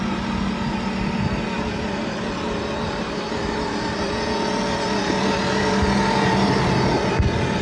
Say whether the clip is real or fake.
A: real